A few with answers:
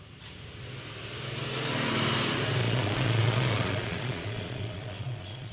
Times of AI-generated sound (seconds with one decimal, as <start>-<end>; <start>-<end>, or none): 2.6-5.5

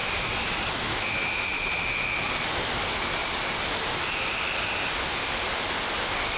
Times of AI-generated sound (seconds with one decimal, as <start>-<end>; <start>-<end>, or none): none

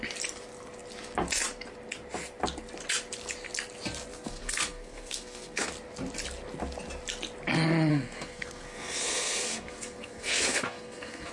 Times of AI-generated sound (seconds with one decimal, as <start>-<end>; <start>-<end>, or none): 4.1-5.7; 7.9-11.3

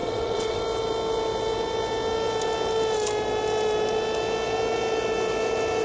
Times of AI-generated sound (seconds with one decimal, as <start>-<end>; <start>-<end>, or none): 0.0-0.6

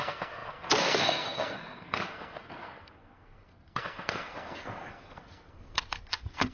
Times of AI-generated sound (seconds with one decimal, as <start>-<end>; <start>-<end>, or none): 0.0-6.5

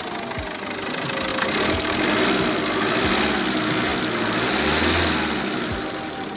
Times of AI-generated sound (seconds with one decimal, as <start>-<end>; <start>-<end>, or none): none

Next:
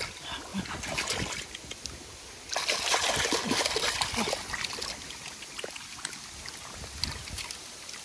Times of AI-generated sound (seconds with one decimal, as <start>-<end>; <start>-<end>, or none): none

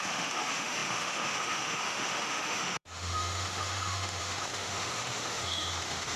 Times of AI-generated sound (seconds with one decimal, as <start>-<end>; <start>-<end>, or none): 0.0-6.2